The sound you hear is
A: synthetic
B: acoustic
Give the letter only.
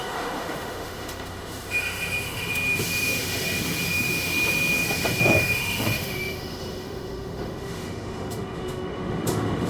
A